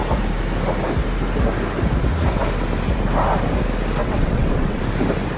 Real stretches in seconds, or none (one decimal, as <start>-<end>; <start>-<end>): 0.0-4.0; 4.8-5.4